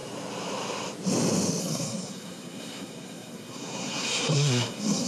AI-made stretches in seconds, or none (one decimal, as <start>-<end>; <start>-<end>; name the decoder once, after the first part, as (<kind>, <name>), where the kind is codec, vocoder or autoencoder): 1.6-5.1 (codec, SNAC)

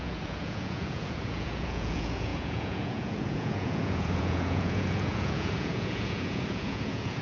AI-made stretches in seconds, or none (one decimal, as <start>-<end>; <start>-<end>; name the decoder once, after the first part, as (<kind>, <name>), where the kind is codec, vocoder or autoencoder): 0.0-7.2 (vocoder, Vocos)

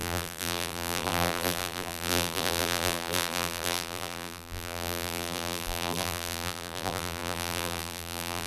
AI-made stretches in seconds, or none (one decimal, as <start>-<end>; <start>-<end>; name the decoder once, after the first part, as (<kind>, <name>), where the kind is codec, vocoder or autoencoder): 0.0-8.5 (vocoder, BigVGAN v2)

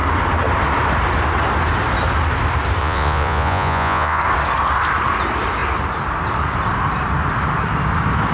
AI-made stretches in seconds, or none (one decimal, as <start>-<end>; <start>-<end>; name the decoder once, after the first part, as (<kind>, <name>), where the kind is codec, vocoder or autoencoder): 2.8-4.2 (vocoder, Vocos)

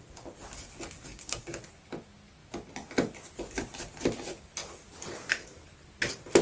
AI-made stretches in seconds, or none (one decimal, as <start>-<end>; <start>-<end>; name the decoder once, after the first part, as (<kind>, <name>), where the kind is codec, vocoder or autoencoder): 1.1-1.6 (codec, DAC)

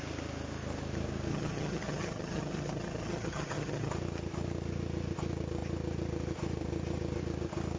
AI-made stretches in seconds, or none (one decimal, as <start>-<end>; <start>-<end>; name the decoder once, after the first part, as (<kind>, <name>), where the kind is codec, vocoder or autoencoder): 1.3-3.9 (vocoder, HiFi-GAN)